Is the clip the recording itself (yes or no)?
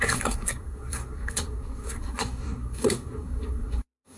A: no